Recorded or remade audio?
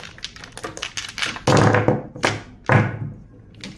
recorded